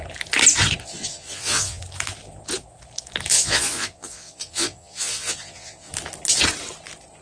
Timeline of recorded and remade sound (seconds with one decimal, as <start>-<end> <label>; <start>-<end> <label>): 0.0-0.8 recorded; 0.8-1.8 remade; 1.8-3.3 recorded; 3.3-5.9 remade; 5.9-7.2 recorded